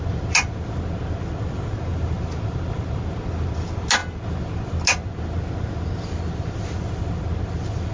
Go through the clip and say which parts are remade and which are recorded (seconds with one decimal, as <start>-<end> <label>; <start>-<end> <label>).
0.0-7.9 recorded